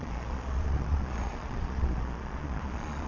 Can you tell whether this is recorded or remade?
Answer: remade